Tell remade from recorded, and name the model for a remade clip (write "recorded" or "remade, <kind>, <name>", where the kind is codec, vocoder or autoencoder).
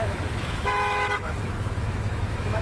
remade, autoencoder, DAC-VAE